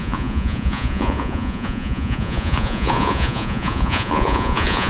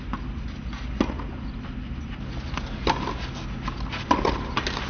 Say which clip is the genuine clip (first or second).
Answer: second